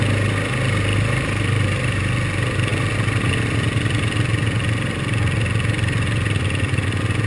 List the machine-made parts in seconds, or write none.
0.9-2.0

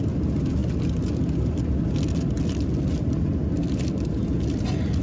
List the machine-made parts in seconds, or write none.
none

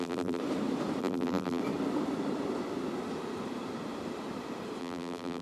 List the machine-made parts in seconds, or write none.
0.0-0.4; 1.0-1.6; 4.8-5.4

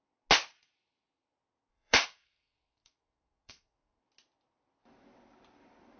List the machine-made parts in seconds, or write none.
1.7-4.0

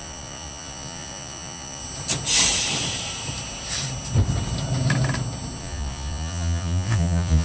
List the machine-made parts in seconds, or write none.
0.0-1.8; 5.6-7.4